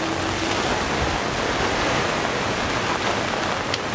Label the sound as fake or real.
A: real